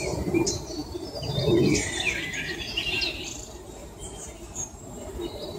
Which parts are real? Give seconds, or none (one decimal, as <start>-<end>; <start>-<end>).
none